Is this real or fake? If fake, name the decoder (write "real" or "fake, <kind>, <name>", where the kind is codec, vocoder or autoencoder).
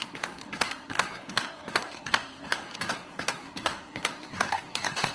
fake, codec, SNAC